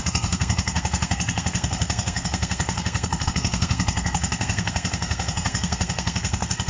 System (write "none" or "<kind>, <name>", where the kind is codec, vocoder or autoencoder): codec, SNAC